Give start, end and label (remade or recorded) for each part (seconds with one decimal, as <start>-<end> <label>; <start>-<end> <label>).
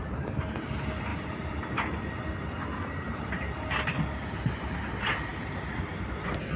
0.0-1.1 recorded; 1.1-4.1 remade; 4.1-5.3 recorded; 5.3-5.9 remade; 5.9-6.6 recorded